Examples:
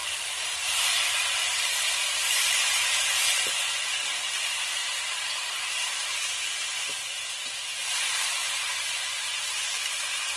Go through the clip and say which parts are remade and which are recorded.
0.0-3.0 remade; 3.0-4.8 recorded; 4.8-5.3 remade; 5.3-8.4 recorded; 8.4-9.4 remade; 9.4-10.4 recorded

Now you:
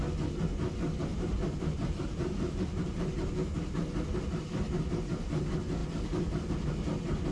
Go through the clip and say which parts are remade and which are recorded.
0.0-1.1 recorded; 1.1-3.7 remade; 3.7-7.3 recorded